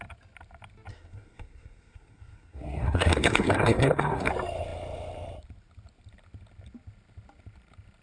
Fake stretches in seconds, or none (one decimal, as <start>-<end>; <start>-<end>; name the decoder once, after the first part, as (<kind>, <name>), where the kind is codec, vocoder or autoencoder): 0.9-4.3 (codec, SNAC)